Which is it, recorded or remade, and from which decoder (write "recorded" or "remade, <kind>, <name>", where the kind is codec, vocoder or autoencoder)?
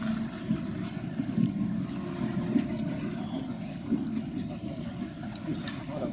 recorded